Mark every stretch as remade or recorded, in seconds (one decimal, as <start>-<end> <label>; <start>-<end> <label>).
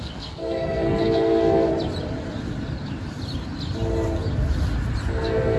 0.0-1.7 remade; 1.7-5.1 recorded; 5.1-5.6 remade